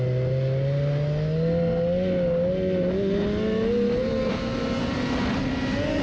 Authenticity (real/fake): real